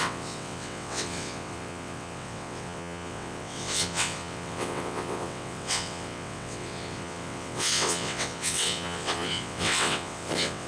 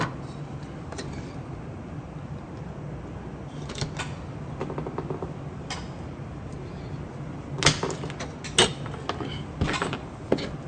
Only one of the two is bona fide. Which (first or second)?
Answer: second